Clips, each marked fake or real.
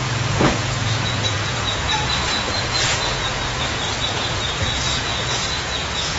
fake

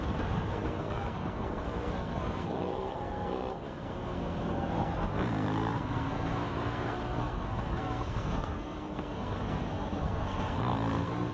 fake